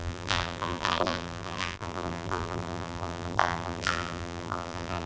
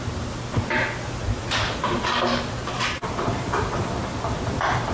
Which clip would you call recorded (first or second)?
second